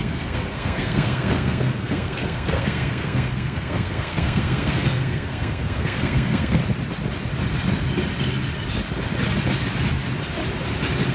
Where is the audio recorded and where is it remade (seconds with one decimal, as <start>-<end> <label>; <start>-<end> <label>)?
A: 0.0-6.6 remade; 6.6-11.1 recorded